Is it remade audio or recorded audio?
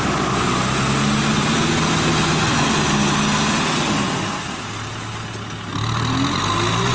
recorded